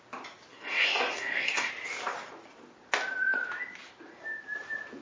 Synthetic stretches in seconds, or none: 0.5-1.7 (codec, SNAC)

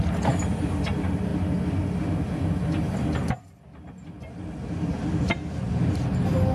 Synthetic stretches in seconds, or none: none

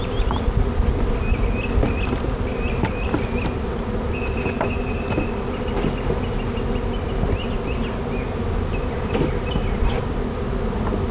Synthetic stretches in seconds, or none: none

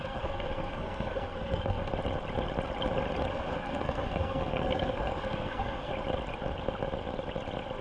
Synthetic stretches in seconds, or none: 0.0-1.9 (codec, SNAC); 3.3-5.9